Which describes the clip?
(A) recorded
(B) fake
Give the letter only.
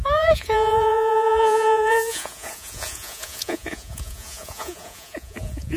B